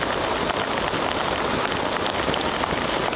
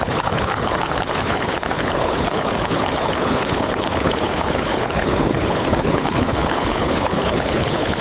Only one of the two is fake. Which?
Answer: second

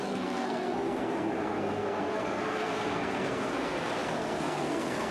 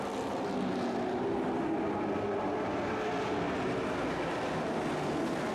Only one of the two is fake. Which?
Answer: first